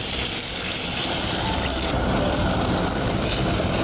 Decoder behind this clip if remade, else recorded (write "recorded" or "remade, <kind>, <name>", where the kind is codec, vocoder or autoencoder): remade, vocoder, BigVGAN v2